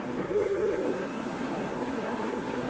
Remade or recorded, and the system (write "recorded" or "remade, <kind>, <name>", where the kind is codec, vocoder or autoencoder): remade, codec, SNAC